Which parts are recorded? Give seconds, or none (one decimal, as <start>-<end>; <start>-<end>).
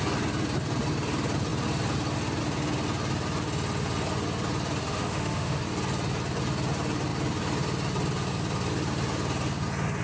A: 0.0-4.8; 5.6-10.0